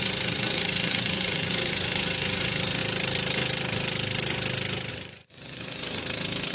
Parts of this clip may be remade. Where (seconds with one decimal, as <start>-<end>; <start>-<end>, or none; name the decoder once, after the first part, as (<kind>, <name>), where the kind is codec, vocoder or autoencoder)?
0.0-2.8 (vocoder, Vocos); 4.9-6.0